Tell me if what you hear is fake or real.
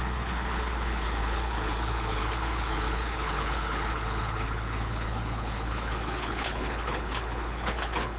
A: fake